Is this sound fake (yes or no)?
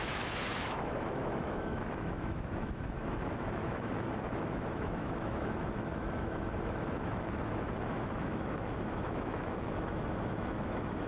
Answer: yes